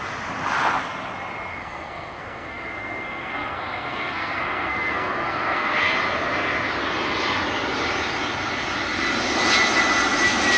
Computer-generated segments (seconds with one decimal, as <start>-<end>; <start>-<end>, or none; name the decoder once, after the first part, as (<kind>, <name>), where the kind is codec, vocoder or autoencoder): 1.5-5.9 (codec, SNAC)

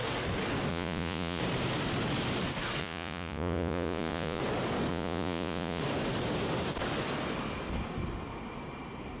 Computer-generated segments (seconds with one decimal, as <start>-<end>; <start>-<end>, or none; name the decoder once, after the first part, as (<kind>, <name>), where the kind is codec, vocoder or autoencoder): 0.7-1.4 (vocoder, Vocos); 2.8-4.4; 4.9-5.8

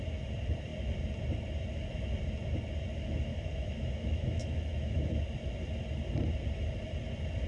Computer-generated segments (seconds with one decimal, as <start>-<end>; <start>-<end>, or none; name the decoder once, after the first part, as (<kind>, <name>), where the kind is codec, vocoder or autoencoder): 3.3-5.2 (autoencoder, DAC-VAE)